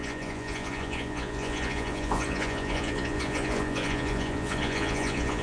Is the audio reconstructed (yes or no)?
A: yes